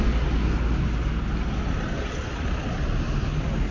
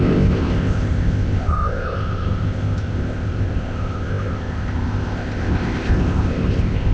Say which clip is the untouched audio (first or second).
first